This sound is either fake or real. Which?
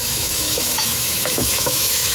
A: fake